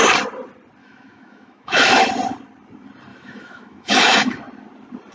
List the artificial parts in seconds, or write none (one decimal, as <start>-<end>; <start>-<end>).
0.8-2.0; 3.1-4.4